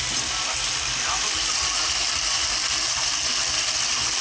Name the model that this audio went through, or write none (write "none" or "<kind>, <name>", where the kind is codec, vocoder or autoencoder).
none